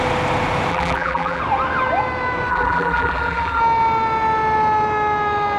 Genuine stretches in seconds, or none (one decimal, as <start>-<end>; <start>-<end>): 0.0-0.7; 1.4-2.5; 3.6-5.6